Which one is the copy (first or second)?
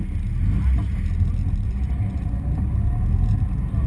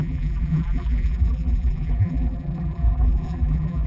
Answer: second